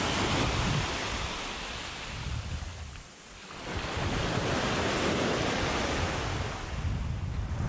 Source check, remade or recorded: recorded